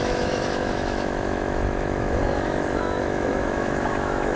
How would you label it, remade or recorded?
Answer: remade